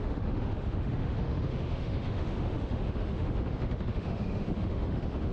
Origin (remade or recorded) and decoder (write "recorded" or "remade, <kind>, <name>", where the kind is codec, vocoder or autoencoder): remade, autoencoder, DAC-VAE